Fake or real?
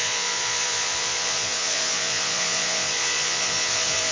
fake